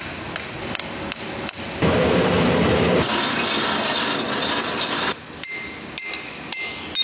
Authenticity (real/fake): real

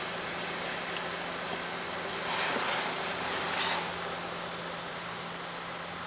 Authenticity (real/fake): real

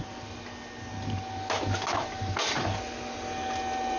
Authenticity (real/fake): real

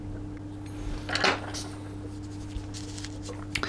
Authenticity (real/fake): real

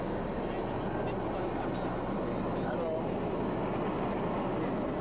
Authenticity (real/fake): real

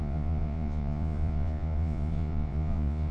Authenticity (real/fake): fake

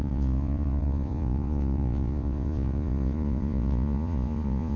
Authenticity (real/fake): fake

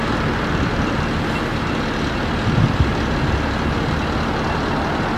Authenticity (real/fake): real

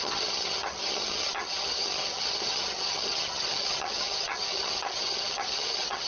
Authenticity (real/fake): fake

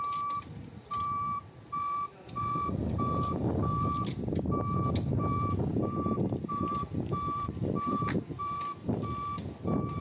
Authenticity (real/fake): fake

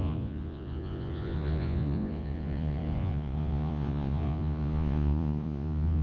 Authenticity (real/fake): fake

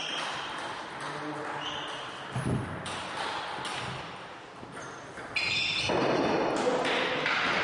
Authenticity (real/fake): real